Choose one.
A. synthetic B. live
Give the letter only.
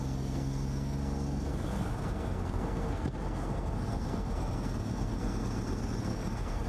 A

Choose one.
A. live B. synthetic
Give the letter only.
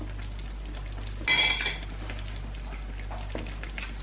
A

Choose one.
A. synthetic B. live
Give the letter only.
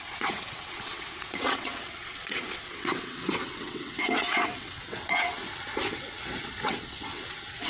A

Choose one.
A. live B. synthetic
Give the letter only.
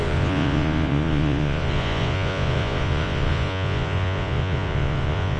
B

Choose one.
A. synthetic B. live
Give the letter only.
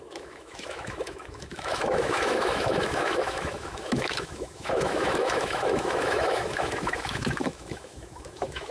A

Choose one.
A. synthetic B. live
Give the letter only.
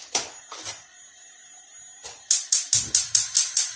B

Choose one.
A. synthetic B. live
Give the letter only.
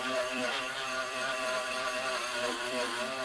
A